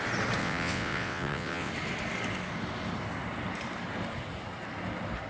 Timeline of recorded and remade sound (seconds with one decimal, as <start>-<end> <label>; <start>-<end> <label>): 0.0-0.4 recorded; 0.4-1.7 remade; 1.7-5.3 recorded